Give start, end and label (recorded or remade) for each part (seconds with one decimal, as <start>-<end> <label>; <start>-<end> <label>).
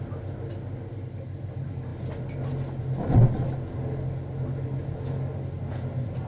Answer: 0.0-6.3 recorded